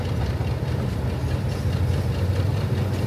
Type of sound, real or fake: real